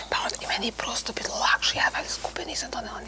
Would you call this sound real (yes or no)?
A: yes